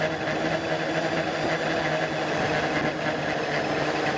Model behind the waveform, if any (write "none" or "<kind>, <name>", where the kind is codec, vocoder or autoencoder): none